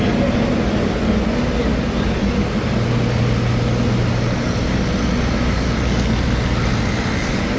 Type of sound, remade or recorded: recorded